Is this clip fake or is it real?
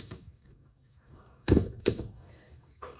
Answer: fake